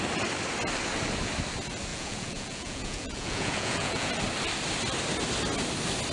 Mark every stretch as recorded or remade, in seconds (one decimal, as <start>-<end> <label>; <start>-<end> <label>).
0.0-1.9 recorded; 1.9-4.1 remade; 4.1-6.1 recorded